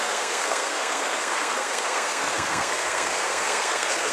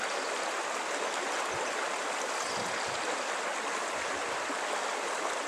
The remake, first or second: first